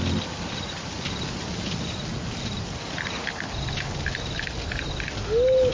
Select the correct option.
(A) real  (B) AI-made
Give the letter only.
A